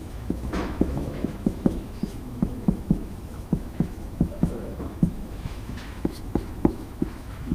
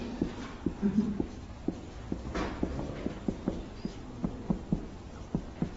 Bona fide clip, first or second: second